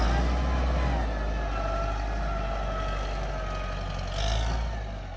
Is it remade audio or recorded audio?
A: recorded